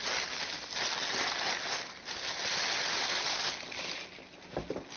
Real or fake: real